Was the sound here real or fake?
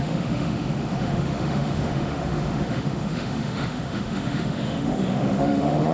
fake